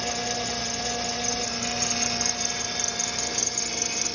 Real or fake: real